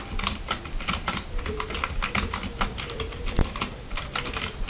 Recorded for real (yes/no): yes